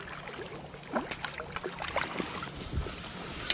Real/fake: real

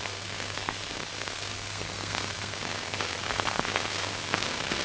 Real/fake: fake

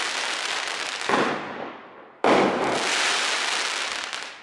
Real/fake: real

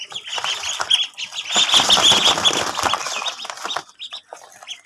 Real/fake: real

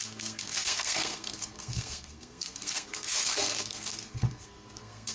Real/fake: fake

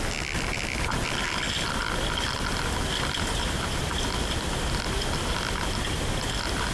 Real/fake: real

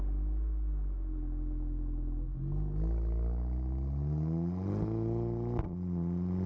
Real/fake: real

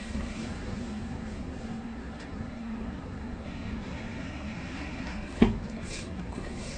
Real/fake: fake